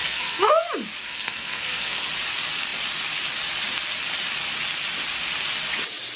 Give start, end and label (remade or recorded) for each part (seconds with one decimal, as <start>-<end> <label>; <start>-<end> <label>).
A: 0.0-0.5 remade; 0.5-1.0 recorded; 1.0-2.1 remade; 2.1-6.2 recorded